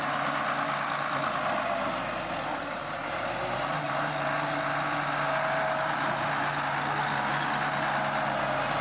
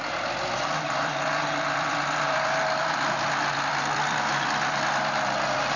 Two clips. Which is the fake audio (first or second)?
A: second